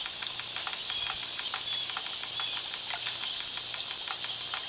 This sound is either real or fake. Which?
real